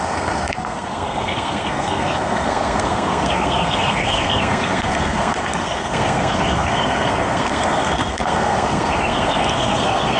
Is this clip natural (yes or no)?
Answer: no